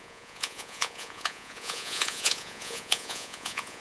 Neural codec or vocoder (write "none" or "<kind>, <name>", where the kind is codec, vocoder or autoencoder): vocoder, Vocos